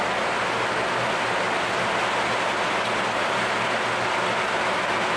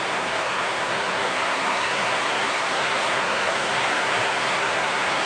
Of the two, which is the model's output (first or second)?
second